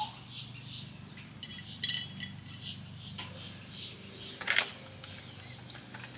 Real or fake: real